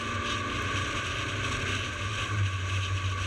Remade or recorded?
recorded